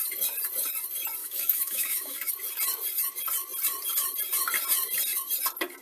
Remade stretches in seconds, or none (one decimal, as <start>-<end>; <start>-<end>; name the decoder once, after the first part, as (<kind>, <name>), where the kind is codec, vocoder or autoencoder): 1.2-2.3 (autoencoder, DAC-VAE)